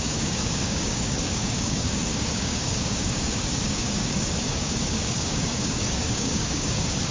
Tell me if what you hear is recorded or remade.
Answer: remade